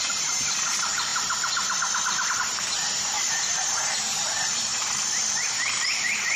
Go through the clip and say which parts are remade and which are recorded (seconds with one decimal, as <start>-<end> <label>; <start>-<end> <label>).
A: 0.0-1.1 remade; 1.1-3.3 recorded; 3.3-4.7 remade; 4.7-5.3 recorded; 5.3-6.4 remade